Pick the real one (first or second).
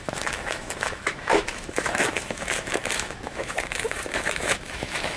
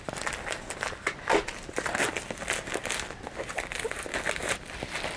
second